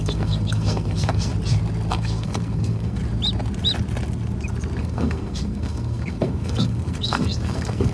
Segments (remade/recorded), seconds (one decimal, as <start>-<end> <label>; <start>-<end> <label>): 0.0-1.3 remade; 1.3-1.9 recorded; 1.9-3.0 remade; 3.0-4.8 recorded; 4.8-7.9 remade